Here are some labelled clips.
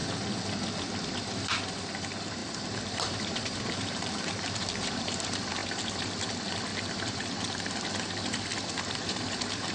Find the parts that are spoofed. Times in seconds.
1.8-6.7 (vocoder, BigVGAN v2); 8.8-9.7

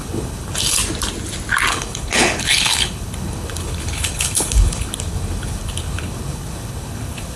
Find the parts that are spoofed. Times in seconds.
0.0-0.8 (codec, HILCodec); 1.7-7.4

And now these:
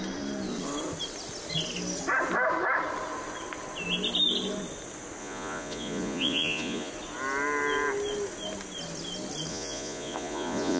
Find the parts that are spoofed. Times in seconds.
5.2-6.9 (vocoder, Vocos); 9.5-10.8